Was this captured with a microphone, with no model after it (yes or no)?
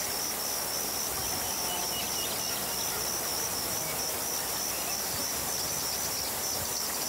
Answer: yes